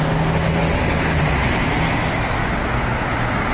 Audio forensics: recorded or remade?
recorded